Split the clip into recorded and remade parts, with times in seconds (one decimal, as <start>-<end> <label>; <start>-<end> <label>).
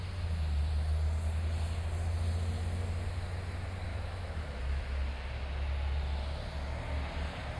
0.0-3.9 recorded; 3.9-4.8 remade; 4.8-7.6 recorded